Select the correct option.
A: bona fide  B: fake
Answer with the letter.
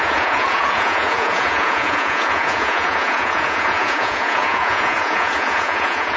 B